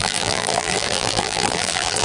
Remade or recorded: remade